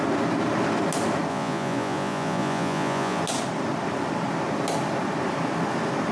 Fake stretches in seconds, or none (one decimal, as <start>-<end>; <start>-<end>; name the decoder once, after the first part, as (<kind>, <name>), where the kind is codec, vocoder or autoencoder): 1.3-3.2 (vocoder, Vocos)